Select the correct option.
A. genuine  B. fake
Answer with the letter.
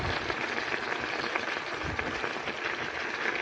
A